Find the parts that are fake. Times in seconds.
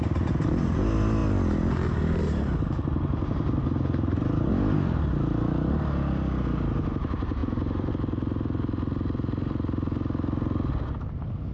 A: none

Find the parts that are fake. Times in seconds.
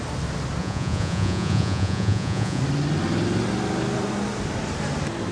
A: 0.6-2.6 (vocoder, Vocos)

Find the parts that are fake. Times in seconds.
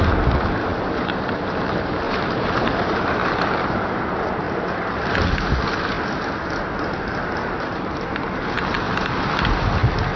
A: 0.6-5.2 (vocoder, BigVGAN v2); 7.2-8.4